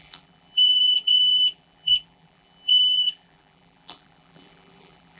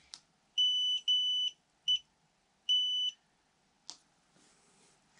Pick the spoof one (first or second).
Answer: first